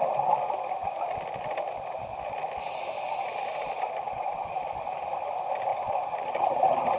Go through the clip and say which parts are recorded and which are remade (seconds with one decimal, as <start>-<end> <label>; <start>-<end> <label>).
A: 0.0-7.0 recorded